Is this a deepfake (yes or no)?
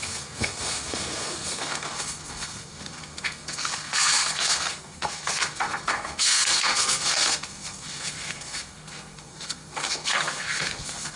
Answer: yes